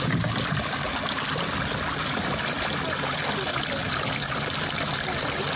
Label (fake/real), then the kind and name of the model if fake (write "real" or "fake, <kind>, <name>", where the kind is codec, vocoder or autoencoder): real